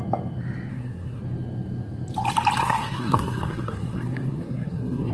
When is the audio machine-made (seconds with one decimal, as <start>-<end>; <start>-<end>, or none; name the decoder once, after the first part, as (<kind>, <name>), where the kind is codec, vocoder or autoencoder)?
0.7-1.2 (codec, SNAC); 2.6-5.1